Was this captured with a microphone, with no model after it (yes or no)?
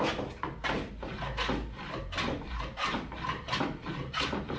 yes